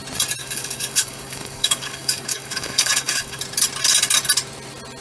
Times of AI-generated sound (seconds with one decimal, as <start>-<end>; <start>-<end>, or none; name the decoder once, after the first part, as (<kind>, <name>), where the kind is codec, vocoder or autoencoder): 0.4-3.4 (codec, DAC)